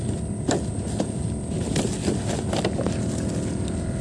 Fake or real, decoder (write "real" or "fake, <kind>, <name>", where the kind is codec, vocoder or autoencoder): real